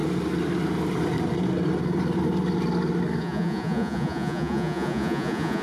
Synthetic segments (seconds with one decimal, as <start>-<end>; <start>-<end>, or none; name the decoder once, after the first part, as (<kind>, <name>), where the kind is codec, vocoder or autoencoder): 3.2-5.6 (vocoder, Vocos)